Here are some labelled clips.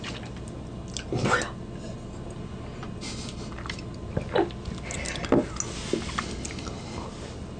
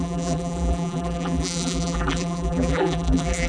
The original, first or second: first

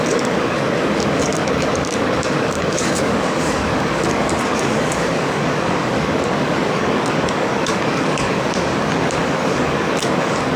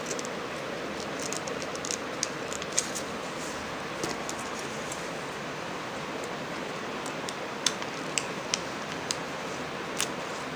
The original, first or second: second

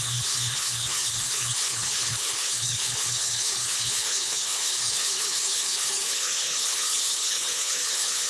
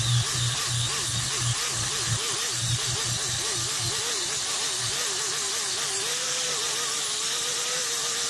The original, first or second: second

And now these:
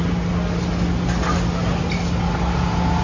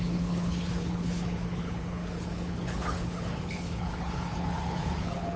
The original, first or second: first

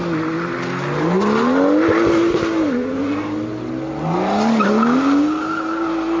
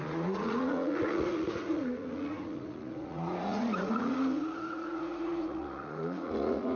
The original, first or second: first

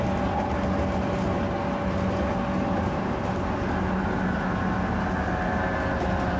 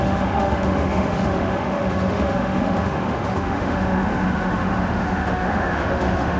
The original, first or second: first